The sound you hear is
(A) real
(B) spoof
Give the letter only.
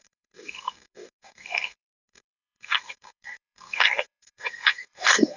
B